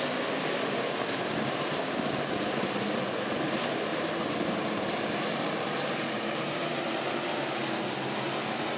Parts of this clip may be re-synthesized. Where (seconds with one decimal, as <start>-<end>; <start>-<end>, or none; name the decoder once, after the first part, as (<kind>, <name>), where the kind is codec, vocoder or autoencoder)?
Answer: 3.9-6.9 (vocoder, BigVGAN v2)